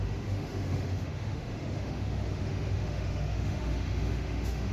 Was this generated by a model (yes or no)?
yes